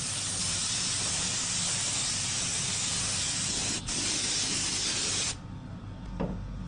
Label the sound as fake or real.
real